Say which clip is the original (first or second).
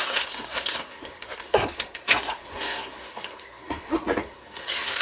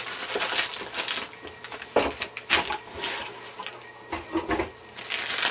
second